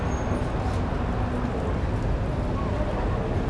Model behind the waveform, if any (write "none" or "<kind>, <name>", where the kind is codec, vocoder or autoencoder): none